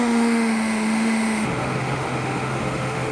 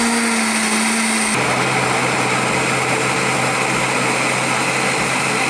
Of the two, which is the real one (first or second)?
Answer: second